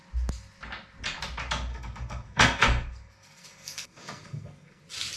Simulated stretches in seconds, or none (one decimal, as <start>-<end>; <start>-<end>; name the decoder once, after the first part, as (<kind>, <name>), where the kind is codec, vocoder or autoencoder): 1.7-4.8 (codec, SNAC)